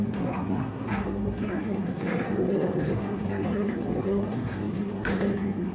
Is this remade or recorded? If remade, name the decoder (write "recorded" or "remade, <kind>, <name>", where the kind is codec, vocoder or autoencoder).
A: remade, codec, SNAC